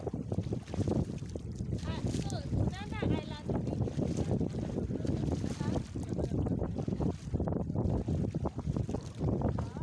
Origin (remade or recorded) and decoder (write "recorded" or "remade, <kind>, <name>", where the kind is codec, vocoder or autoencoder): recorded